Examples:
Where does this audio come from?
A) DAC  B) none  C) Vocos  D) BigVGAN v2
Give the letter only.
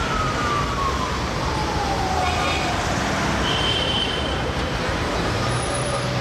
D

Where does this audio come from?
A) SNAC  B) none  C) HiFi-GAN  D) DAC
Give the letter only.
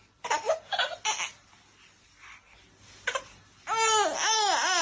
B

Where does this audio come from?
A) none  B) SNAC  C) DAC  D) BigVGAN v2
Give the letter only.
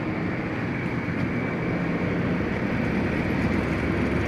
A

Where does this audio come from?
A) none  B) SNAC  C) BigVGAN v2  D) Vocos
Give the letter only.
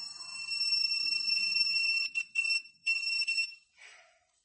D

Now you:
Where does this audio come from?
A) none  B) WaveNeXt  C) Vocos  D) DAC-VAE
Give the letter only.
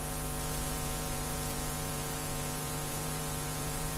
C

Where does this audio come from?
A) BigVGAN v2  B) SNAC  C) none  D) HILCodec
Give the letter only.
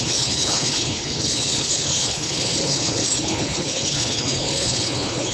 D